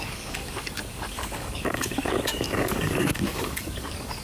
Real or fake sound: fake